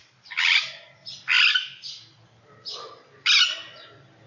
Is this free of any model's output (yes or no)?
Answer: yes